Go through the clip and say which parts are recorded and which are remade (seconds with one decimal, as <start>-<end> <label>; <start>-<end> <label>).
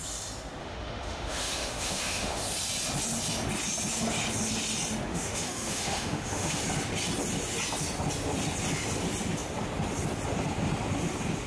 0.0-0.6 recorded; 0.6-2.4 remade; 2.4-5.1 recorded; 5.1-6.6 remade; 6.6-11.5 recorded